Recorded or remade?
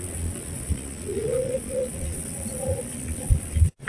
remade